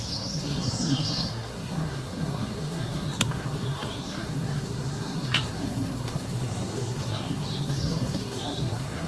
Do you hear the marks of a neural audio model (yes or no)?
yes